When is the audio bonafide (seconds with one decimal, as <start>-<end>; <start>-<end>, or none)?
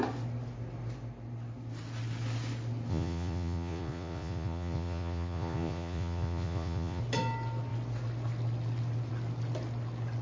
0.0-2.9; 7.0-10.2